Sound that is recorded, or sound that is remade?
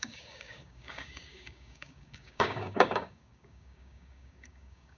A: remade